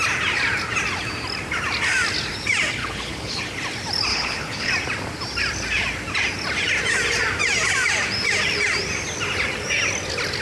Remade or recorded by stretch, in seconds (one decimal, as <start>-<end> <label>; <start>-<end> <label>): 0.0-2.8 recorded; 2.8-3.4 remade; 3.4-4.1 recorded; 4.1-4.7 remade; 4.7-10.4 recorded